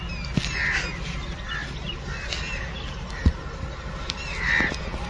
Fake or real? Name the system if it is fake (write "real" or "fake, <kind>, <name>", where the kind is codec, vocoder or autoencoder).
real